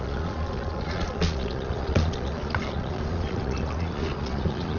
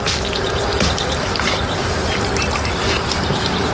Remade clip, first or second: first